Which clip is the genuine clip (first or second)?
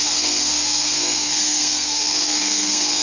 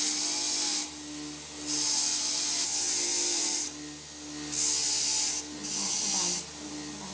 second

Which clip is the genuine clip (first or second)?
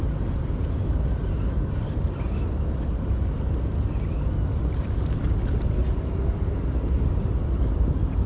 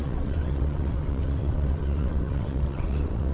first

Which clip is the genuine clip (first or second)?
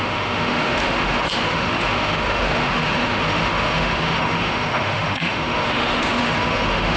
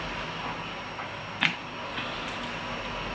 second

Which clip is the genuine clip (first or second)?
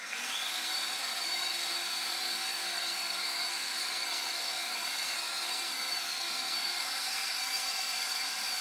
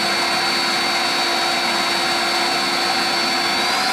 second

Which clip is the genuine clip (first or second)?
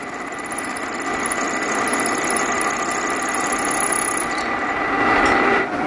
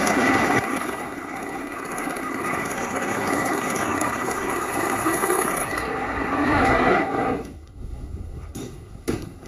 first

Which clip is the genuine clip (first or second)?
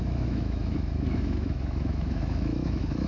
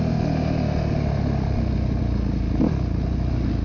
second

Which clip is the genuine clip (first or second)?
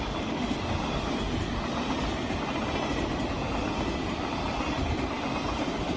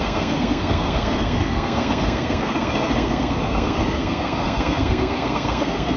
first